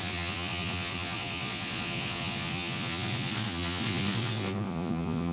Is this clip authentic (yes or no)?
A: no